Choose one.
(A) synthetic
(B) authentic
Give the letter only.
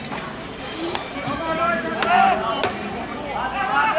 B